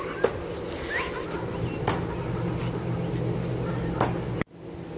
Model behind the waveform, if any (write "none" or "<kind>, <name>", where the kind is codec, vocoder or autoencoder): none